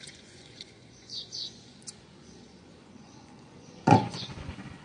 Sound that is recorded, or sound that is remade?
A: remade